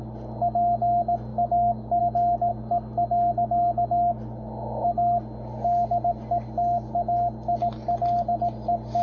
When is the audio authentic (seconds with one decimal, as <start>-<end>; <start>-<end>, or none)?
0.0-1.3; 2.0-9.0